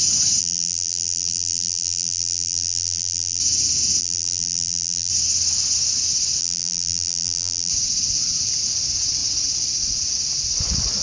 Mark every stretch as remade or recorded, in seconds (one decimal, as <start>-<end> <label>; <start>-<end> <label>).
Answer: 0.0-0.4 recorded; 0.4-3.4 remade; 3.4-4.0 recorded; 4.0-5.1 remade; 5.1-6.4 recorded; 6.4-7.7 remade; 7.7-11.0 recorded

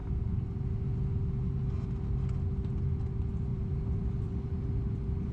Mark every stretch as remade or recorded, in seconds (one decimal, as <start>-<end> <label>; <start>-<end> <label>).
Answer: 0.0-3.5 recorded; 3.5-4.6 remade; 4.6-5.3 recorded